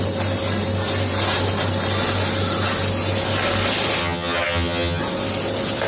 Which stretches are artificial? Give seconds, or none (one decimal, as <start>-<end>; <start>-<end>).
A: 4.0-5.0